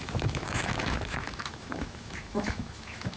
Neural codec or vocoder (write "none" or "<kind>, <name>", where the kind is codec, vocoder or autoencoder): autoencoder, DAC-VAE